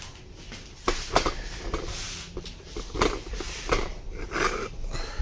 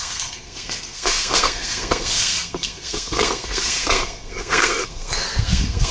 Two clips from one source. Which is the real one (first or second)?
first